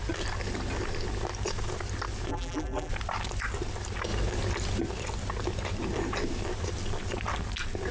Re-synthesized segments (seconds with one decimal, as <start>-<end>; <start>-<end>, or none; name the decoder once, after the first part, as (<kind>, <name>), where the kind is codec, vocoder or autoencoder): 2.3-2.9 (vocoder, BigVGAN v2)